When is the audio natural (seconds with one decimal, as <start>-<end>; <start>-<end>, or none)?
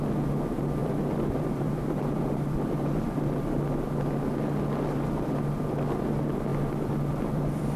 0.0-0.8; 3.2-6.5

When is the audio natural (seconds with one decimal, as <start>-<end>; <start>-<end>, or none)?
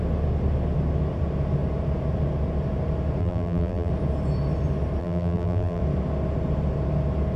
0.0-3.2; 3.9-5.0; 5.8-7.4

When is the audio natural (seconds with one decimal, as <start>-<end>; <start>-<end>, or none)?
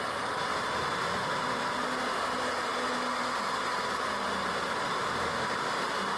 0.0-6.2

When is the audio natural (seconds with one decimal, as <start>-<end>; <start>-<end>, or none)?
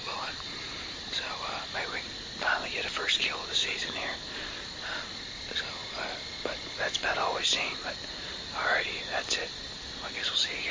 0.0-10.7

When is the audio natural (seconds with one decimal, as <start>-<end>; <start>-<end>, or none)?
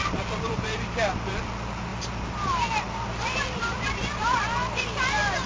1.3-1.9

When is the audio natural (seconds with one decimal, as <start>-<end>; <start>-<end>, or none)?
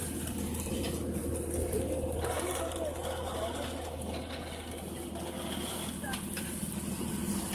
1.2-5.7